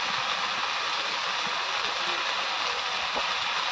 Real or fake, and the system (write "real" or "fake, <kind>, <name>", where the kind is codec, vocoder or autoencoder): real